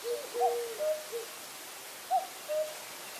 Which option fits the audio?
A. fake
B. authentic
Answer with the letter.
B